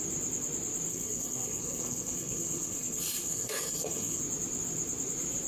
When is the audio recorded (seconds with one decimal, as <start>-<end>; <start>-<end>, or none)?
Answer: 0.0-0.9; 4.2-5.5

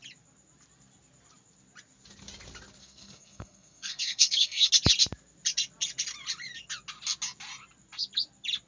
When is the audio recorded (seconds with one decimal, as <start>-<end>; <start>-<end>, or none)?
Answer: 0.0-2.8; 4.7-8.7

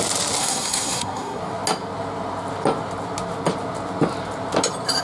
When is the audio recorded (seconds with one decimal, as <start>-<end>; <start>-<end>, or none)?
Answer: 0.0-0.4; 1.4-5.0

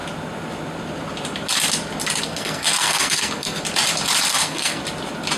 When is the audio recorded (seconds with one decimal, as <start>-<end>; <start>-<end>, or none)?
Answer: 0.0-2.2; 3.6-4.3; 4.8-5.4

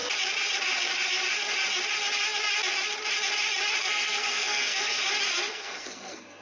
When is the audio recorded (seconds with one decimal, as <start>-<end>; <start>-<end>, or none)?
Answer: 0.0-3.8; 5.0-5.5

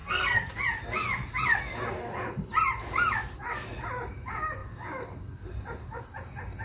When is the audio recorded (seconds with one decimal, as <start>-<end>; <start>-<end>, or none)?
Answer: 0.5-6.6

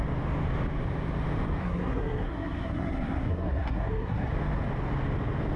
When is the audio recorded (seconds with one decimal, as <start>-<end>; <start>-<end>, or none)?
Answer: 0.0-1.6; 4.3-5.6

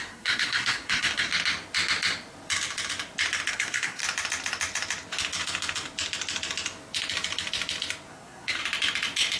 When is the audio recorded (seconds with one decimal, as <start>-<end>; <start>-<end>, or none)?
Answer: 1.3-3.5; 4.0-8.1; 8.6-9.4